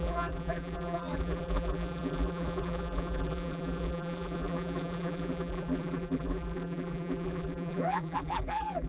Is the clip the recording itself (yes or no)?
no